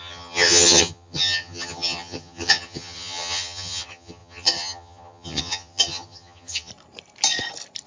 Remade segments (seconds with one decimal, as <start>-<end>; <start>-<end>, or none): 0.0-6.7